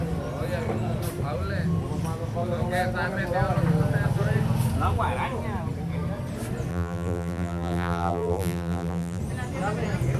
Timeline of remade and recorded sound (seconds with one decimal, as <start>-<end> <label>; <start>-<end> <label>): 0.0-6.7 recorded; 6.7-9.2 remade; 9.2-10.2 recorded